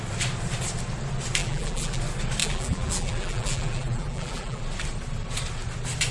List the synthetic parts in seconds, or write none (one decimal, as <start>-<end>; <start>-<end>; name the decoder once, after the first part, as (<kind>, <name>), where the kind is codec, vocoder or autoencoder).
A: 1.4-2.0 (vocoder, BigVGAN v2); 2.4-4.6

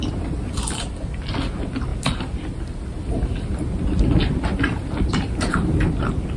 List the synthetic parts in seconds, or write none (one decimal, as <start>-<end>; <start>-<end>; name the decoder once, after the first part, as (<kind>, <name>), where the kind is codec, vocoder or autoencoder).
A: 4.5-5.8 (vocoder, BigVGAN v2)

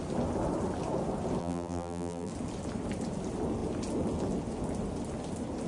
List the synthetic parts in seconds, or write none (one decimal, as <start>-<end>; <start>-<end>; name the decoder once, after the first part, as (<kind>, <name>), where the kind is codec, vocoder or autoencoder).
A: 1.4-2.3 (vocoder, BigVGAN v2)

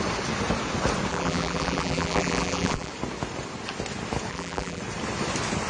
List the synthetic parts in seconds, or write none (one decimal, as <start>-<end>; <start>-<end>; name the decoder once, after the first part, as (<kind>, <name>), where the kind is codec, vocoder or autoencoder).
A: 1.1-2.9 (vocoder, BigVGAN v2); 4.3-4.8

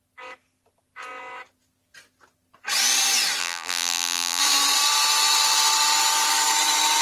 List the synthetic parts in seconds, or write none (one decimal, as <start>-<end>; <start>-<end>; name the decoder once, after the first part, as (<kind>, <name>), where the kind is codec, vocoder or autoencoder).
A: 3.4-4.4 (vocoder, BigVGAN v2)

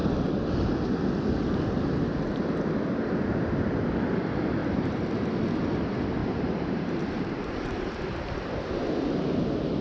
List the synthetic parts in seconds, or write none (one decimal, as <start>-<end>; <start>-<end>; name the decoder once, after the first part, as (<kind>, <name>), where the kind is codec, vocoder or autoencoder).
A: 4.6-5.1 (vocoder, BigVGAN v2); 6.2-7.9

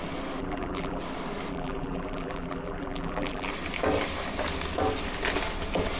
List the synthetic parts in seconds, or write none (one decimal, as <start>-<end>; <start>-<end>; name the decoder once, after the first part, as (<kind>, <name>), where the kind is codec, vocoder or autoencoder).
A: 0.4-1.0 (vocoder, BigVGAN v2); 1.5-3.5